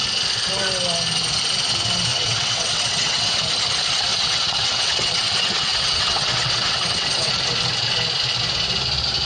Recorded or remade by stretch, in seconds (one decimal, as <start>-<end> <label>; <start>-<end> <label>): 0.0-2.1 recorded; 2.1-3.5 remade; 3.5-4.1 recorded; 4.1-7.3 remade; 7.3-9.2 recorded